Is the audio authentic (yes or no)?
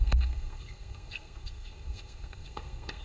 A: no